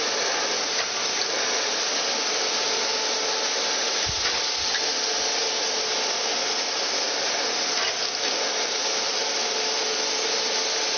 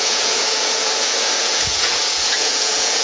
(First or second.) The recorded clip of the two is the first